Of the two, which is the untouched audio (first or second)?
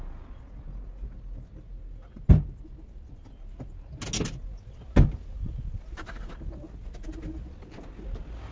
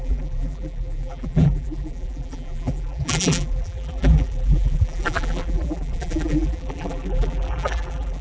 first